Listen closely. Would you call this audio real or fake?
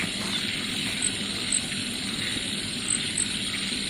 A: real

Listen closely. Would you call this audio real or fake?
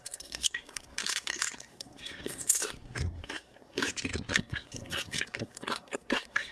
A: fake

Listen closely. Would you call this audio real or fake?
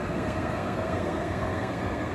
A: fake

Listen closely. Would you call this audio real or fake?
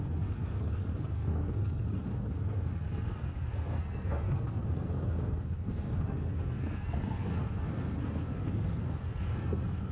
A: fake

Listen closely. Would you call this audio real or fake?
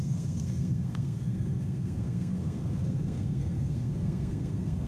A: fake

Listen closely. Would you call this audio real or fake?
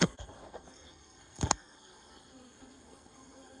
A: fake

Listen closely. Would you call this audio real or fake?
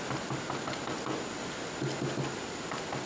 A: real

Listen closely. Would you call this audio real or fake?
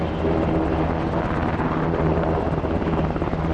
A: real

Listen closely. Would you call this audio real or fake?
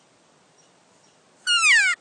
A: real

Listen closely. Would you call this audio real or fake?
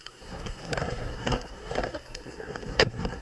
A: fake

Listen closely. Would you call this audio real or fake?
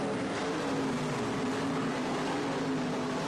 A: real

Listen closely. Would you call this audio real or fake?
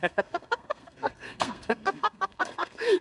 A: fake